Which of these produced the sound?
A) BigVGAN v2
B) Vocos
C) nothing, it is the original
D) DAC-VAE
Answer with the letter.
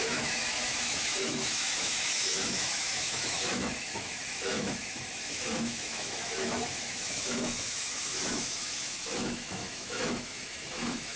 D